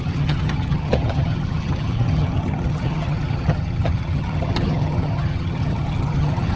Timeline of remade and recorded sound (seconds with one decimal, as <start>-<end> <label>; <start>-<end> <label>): 0.0-6.6 remade